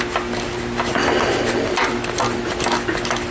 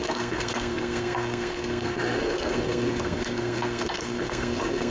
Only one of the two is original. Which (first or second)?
first